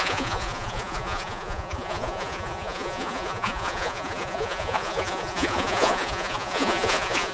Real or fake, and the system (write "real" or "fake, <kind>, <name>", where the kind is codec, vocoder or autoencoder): fake, vocoder, Vocos